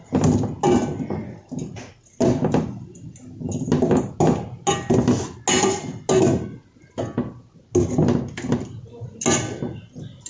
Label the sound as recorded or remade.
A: recorded